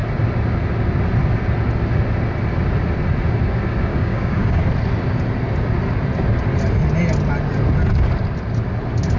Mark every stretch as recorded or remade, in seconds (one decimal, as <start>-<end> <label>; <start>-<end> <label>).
0.0-3.9 recorded; 3.9-4.6 remade; 4.6-9.2 recorded